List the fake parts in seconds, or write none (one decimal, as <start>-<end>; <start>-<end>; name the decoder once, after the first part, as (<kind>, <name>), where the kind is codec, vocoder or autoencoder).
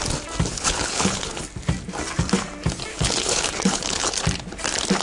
0.5-1.4 (codec, HILCodec); 2.9-4.2